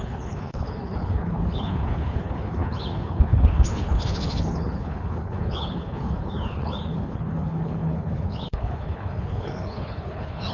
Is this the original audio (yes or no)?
no